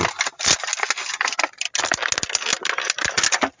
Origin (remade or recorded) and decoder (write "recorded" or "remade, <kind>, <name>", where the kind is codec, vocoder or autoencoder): recorded